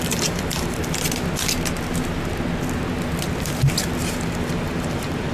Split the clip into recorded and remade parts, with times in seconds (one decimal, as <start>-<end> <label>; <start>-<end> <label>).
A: 0.0-0.8 remade; 0.8-4.0 recorded; 4.0-5.3 remade